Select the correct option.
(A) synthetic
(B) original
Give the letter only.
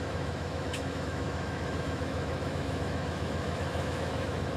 A